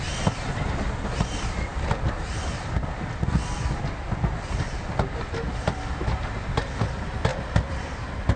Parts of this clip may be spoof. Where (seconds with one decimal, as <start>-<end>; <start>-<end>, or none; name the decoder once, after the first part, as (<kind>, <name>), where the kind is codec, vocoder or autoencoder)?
1.7-2.9 (vocoder, BigVGAN v2); 7.3-8.4